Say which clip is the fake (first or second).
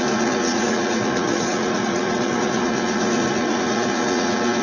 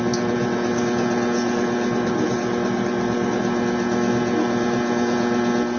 first